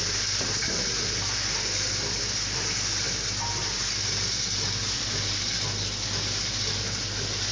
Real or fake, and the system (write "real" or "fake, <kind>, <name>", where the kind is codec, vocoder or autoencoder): real